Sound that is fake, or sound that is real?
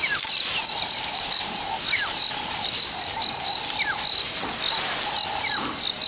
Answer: real